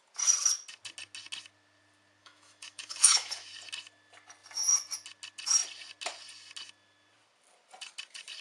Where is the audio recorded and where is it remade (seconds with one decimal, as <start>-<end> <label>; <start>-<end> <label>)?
0.0-2.2 recorded; 2.2-3.5 remade; 3.5-8.4 recorded